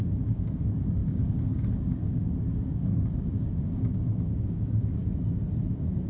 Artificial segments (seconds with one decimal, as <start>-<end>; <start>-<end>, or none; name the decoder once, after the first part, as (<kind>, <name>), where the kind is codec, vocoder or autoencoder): 0.0-5.0 (codec, DAC)